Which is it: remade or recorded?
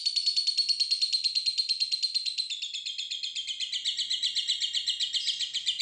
recorded